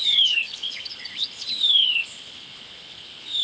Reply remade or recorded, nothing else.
remade